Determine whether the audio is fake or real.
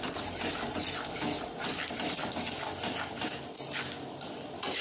real